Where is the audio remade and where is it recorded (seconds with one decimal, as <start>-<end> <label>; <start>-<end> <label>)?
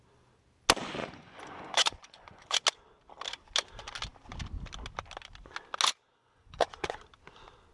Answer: 0.0-1.0 recorded; 1.0-2.6 remade; 2.6-6.2 recorded; 6.2-7.0 remade; 7.0-7.7 recorded